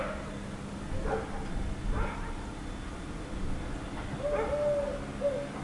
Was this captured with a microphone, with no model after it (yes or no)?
yes